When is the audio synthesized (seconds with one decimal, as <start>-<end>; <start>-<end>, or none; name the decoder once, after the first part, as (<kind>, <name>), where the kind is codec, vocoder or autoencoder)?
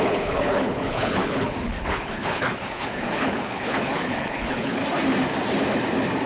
0.0-4.8 (codec, HILCodec)